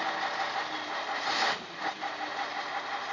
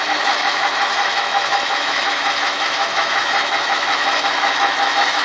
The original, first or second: first